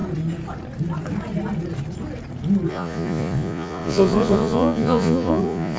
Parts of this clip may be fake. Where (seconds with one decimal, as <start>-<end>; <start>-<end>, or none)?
2.7-5.8

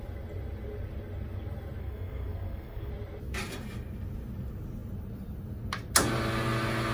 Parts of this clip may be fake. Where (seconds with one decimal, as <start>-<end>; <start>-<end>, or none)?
1.8-2.9

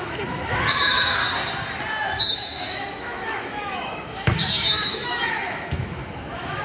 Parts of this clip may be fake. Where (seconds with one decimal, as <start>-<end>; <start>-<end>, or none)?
0.0-1.2; 2.2-6.6

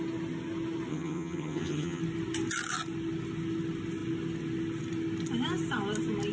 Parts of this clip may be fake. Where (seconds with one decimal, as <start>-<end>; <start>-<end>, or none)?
0.9-2.0